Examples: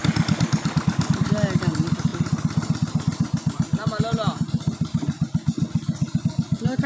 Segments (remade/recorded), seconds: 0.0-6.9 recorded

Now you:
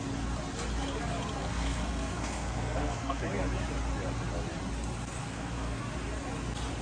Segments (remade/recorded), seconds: 0.0-1.4 recorded; 1.4-3.2 remade; 3.2-5.2 recorded; 5.2-5.8 remade; 5.8-6.8 recorded

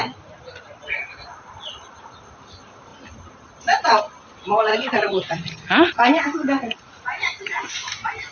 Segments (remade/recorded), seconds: 0.0-4.7 recorded; 4.7-7.7 remade; 7.7-8.3 recorded

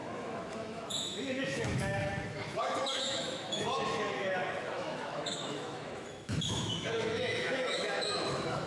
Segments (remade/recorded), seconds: 0.0-8.7 remade

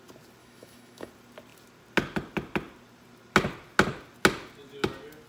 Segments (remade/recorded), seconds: 0.0-0.4 recorded; 0.4-1.1 remade; 1.1-5.3 recorded

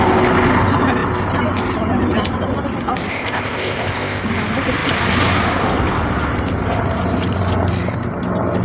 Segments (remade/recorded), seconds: 0.0-3.1 recorded; 3.1-4.2 remade; 4.2-8.6 recorded